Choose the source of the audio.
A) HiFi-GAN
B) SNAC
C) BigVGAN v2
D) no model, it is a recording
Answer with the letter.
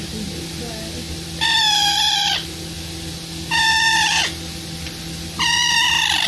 D